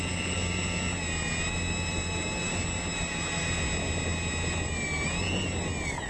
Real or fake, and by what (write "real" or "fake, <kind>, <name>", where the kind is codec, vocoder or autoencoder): real